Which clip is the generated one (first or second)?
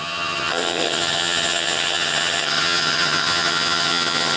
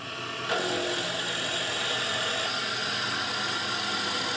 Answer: first